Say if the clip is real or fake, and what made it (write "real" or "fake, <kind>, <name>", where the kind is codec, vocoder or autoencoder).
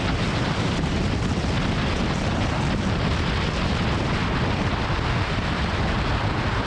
real